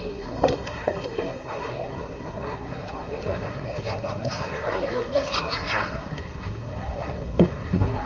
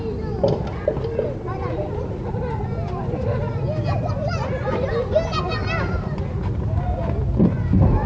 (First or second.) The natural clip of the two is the second